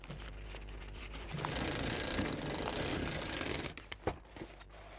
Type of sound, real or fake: real